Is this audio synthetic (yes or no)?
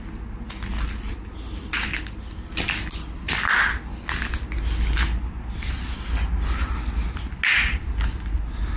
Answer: no